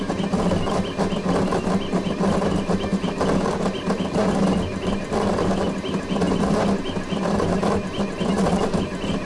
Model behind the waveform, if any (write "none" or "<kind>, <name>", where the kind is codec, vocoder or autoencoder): none